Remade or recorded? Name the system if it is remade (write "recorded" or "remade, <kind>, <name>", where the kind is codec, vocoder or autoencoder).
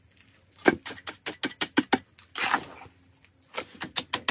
recorded